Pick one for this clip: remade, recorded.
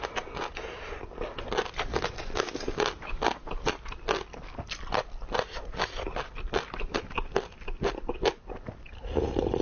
recorded